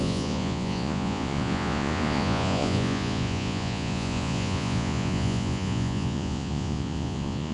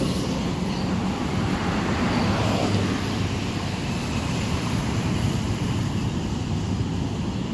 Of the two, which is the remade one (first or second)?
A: first